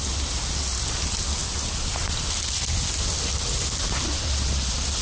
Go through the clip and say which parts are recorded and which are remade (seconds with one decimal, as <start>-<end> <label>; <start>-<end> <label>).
0.0-5.0 recorded